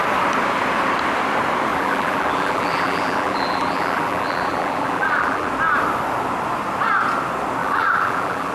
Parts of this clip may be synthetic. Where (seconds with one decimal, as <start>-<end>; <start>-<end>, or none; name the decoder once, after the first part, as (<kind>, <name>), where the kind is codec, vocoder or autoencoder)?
1.7-5.5 (vocoder, BigVGAN v2); 7.6-8.5